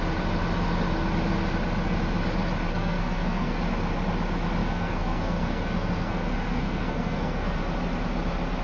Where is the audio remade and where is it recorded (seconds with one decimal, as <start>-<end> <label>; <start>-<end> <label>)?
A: 0.0-2.7 recorded; 2.7-3.6 remade; 3.6-4.6 recorded; 4.6-7.6 remade; 7.6-8.6 recorded